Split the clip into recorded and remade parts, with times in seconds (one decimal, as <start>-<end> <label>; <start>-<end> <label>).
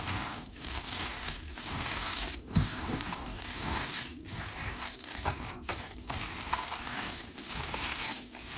0.0-8.6 remade